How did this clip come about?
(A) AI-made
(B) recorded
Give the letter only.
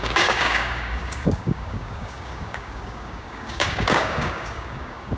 A